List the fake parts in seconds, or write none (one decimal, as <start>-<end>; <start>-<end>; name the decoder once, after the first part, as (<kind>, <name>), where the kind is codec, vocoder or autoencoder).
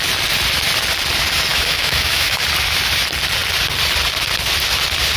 1.5-2.4 (autoencoder, DAC-VAE)